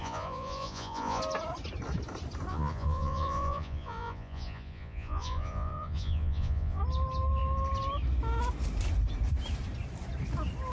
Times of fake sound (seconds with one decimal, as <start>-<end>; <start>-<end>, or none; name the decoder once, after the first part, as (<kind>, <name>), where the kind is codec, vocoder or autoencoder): 0.0-1.2 (vocoder, Vocos); 2.5-6.8